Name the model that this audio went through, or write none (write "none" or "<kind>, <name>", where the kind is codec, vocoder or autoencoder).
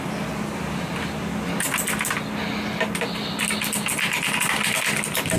none